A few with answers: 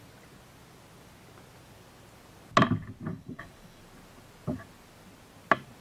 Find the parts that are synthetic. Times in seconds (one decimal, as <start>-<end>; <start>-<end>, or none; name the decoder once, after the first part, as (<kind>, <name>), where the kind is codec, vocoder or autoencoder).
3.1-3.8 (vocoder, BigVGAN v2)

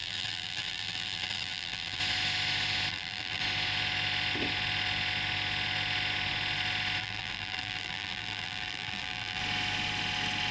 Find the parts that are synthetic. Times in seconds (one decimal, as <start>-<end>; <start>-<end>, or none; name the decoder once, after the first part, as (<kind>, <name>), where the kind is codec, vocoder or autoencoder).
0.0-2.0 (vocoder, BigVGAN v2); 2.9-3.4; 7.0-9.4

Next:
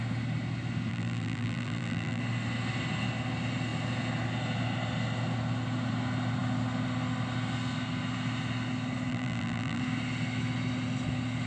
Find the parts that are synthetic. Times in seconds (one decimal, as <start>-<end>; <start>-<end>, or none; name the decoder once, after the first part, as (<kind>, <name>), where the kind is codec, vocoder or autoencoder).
0.9-2.2 (vocoder, BigVGAN v2); 9.1-9.8

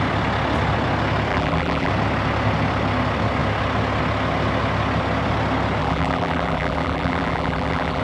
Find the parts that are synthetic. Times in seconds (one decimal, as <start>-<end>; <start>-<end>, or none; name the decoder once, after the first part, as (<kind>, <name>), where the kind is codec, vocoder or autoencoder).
1.3-1.9 (vocoder, BigVGAN v2); 5.8-8.0

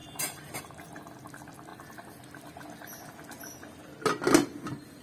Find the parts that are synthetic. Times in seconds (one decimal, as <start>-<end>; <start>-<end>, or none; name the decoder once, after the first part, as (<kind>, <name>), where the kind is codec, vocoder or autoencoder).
0.0-0.6 (vocoder, BigVGAN v2)